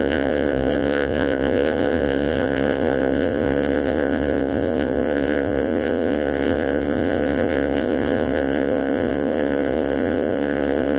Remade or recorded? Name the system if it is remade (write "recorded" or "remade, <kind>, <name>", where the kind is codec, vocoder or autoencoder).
remade, vocoder, Vocos